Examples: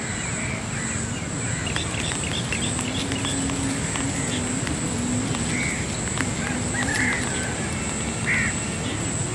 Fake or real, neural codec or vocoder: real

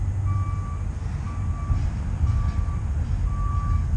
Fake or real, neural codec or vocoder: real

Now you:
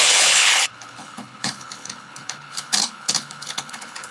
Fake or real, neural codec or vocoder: fake, codec, HILCodec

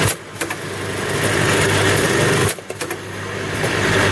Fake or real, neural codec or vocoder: real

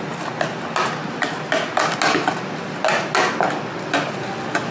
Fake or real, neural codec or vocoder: real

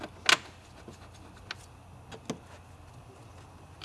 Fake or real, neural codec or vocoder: real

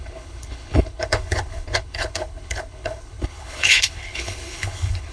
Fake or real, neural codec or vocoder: fake, codec, HILCodec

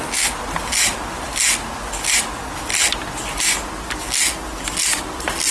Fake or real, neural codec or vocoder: real